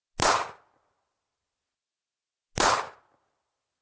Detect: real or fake real